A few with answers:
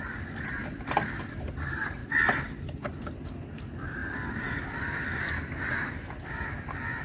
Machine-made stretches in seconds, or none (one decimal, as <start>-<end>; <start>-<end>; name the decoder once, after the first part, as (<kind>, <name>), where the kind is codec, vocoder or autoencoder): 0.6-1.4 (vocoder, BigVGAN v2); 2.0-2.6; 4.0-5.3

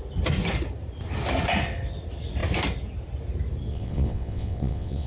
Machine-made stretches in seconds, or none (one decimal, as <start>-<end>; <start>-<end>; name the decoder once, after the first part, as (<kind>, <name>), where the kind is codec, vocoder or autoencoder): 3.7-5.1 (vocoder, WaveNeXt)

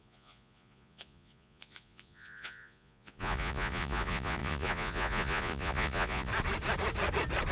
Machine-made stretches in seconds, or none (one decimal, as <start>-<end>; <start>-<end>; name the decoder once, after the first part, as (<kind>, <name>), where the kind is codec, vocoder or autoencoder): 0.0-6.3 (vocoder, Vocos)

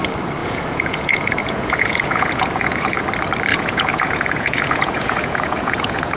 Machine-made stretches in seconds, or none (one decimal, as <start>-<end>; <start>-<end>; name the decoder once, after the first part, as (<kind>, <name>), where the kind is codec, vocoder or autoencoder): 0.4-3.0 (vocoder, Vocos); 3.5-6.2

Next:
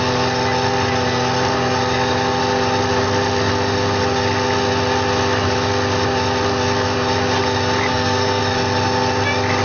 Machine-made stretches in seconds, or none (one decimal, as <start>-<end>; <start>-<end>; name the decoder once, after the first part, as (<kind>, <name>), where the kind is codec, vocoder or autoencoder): 7.9-8.4 (codec, SNAC)